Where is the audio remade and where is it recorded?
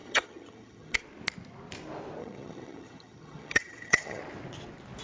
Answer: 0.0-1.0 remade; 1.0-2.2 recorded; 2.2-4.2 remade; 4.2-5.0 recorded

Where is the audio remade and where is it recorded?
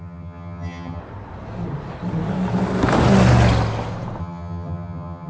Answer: 0.0-1.0 remade; 1.0-4.2 recorded; 4.2-5.3 remade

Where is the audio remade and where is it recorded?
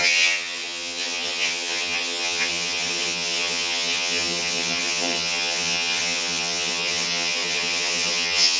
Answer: 0.0-8.6 remade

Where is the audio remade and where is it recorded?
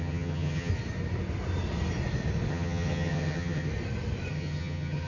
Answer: 0.0-0.7 remade; 0.7-2.5 recorded; 2.5-3.7 remade; 3.7-4.3 recorded; 4.3-5.1 remade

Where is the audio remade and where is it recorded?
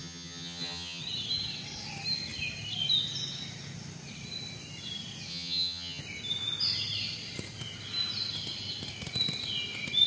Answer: 0.0-1.0 remade; 1.0-5.3 recorded; 5.3-6.0 remade; 6.0-10.1 recorded